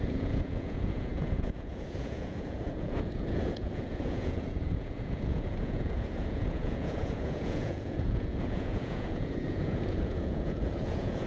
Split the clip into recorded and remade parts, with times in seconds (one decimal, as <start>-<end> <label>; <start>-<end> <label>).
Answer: 0.0-11.3 remade